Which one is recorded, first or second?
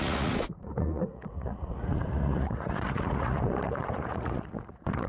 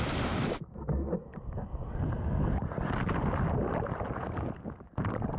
second